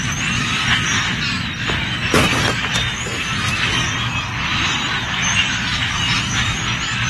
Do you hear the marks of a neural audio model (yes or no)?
no